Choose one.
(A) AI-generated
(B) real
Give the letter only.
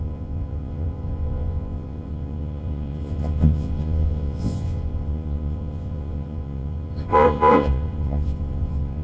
A